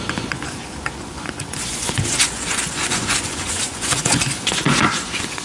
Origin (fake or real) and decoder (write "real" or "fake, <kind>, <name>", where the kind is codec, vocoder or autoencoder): fake, vocoder, Vocos